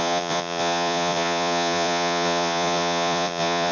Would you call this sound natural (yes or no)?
no